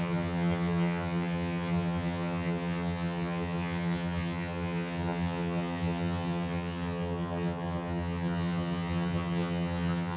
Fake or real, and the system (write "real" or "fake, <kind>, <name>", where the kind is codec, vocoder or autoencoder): fake, vocoder, HiFi-GAN